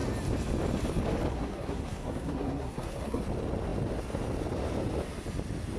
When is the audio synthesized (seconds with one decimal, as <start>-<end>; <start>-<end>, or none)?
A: 1.3-3.2